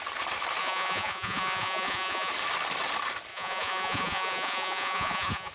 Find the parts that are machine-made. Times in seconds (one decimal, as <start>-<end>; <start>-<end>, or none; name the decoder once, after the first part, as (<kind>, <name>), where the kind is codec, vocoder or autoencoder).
0.6-2.3 (vocoder, Vocos); 3.3-5.5